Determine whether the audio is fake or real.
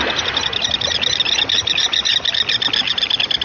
real